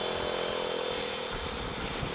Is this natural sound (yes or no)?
yes